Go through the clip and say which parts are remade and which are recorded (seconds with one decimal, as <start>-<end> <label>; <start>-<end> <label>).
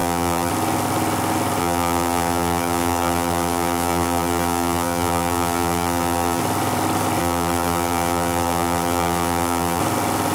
0.0-0.5 remade; 0.5-1.6 recorded; 1.6-6.4 remade; 6.4-7.2 recorded; 7.2-9.8 remade; 9.8-10.3 recorded